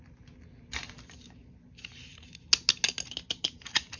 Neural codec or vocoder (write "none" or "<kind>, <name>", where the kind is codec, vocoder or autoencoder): none